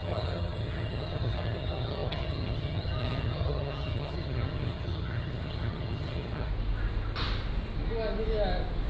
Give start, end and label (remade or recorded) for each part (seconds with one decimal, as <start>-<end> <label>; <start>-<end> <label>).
0.0-6.5 remade; 6.5-8.9 recorded